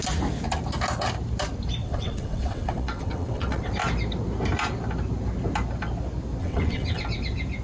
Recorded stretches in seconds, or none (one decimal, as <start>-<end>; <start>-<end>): 0.0-1.8; 3.7-6.4; 7.0-7.6